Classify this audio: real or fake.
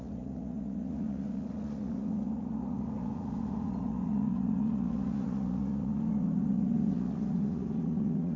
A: fake